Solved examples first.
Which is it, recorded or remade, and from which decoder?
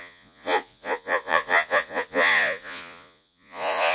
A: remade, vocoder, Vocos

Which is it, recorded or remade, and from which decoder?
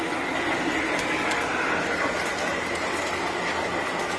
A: recorded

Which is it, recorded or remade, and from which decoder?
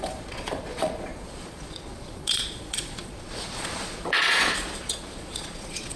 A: remade, vocoder, Vocos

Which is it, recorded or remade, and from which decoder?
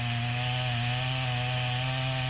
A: recorded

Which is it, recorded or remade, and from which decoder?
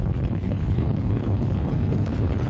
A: remade, codec, HILCodec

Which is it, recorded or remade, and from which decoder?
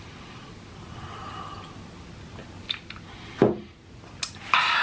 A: recorded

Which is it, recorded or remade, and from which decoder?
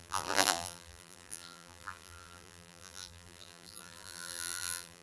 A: remade, vocoder, BigVGAN v2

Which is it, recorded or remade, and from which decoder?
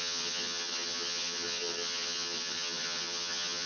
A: remade, vocoder, HiFi-GAN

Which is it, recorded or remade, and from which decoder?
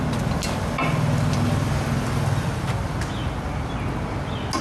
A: recorded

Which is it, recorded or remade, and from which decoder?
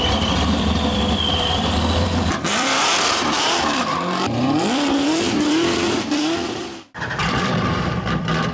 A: remade, vocoder, BigVGAN v2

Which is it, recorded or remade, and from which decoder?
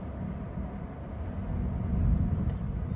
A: recorded